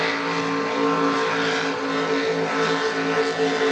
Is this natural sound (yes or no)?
yes